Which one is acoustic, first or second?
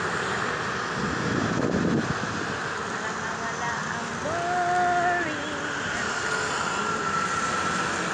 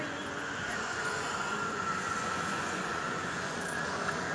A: first